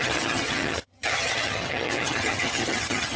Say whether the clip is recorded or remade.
remade